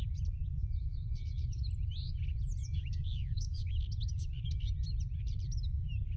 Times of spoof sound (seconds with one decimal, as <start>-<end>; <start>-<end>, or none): 0.4-1.6; 2.6-3.8